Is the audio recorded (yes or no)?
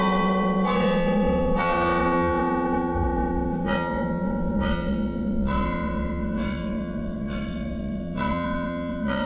no